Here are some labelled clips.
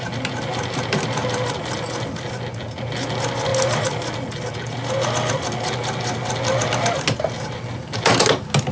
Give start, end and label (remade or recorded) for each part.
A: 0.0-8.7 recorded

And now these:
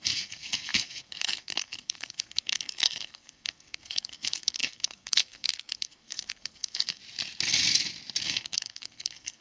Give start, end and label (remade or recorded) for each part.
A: 0.0-7.0 remade; 7.0-8.2 recorded; 8.2-9.4 remade

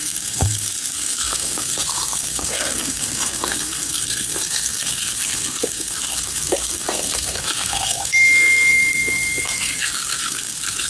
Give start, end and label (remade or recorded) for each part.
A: 0.0-10.9 remade

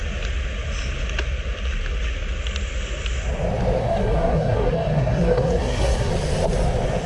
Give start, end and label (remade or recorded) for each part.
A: 0.0-3.8 recorded; 3.8-6.1 remade; 6.1-7.1 recorded

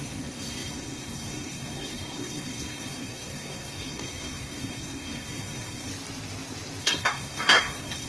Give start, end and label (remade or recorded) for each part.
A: 0.0-5.9 remade; 5.9-6.8 recorded; 6.8-8.1 remade